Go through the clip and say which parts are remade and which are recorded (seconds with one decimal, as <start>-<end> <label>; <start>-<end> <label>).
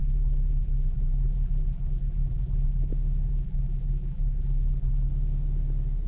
0.0-2.9 remade; 2.9-3.3 recorded; 3.3-5.1 remade; 5.1-6.1 recorded